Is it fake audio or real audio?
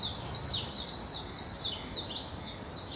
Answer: real